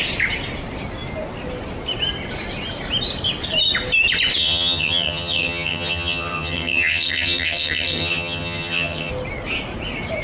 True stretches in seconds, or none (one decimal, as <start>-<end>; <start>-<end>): 0.0-4.4; 9.1-10.2